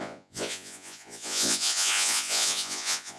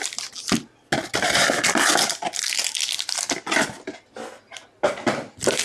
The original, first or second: second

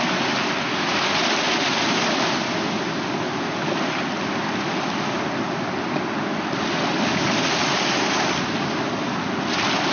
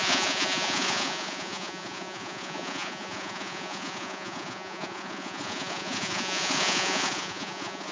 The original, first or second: first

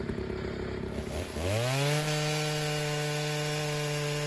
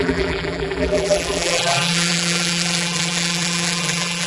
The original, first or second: first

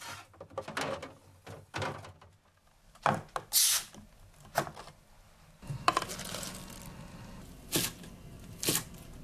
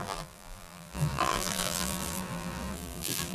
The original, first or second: first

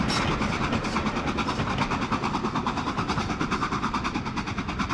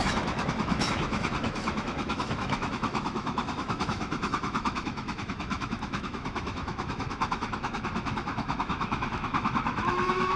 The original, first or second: first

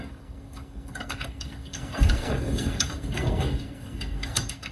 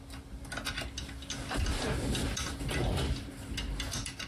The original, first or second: second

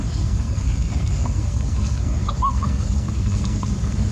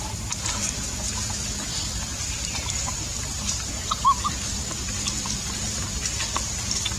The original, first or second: second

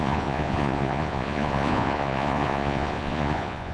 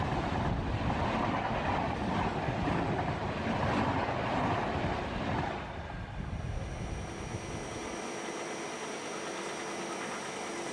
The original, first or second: second